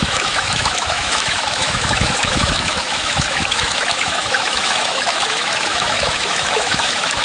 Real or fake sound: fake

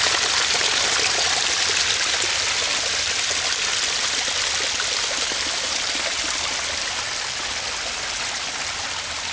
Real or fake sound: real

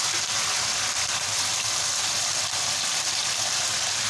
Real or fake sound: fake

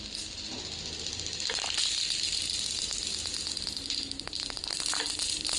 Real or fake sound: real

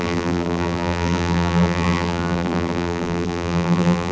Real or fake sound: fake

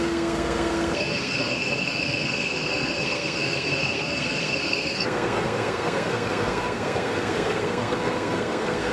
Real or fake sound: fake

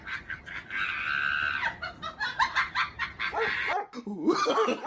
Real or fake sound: real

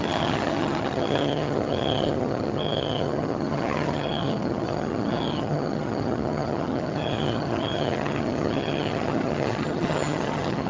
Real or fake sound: fake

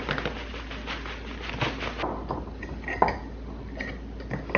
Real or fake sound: real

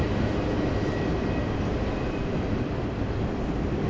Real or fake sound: real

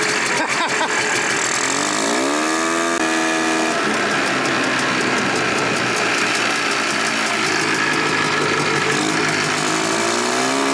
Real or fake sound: real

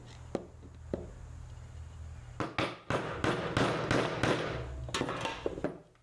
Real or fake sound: real